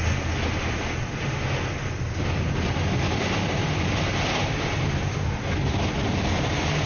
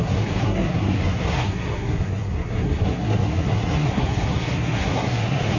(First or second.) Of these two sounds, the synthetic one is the second